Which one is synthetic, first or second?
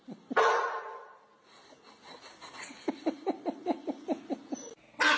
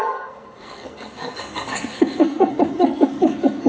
second